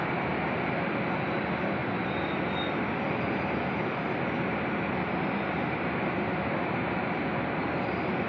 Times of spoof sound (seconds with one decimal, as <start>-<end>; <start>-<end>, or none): none